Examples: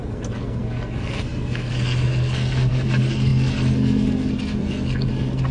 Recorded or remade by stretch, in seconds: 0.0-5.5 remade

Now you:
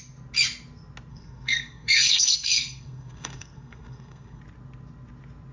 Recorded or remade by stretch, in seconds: 0.0-1.1 recorded; 1.1-4.4 remade; 4.4-5.5 recorded

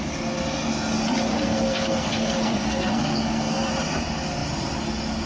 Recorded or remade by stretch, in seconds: 0.0-1.3 recorded; 1.3-3.7 remade; 3.7-5.3 recorded

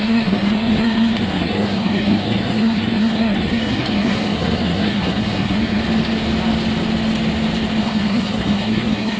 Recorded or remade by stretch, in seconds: 0.0-5.8 remade; 5.8-7.8 recorded; 7.8-9.2 remade

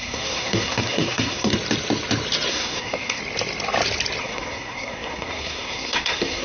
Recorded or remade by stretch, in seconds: 0.0-1.5 remade; 1.5-2.5 recorded; 2.5-3.2 remade; 3.2-4.2 recorded; 4.2-6.4 remade